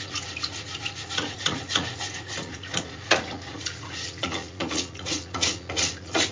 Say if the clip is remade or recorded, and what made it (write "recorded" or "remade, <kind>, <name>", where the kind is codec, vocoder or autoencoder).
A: remade, vocoder, Vocos